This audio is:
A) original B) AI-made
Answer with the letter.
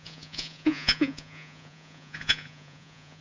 B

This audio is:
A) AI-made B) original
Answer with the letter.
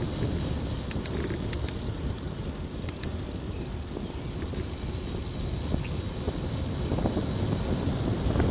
B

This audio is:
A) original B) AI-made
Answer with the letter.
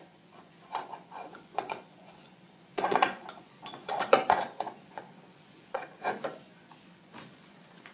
B